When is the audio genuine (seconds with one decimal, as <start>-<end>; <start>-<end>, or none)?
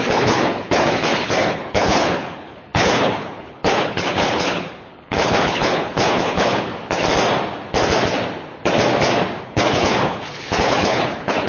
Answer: 6.7-9.4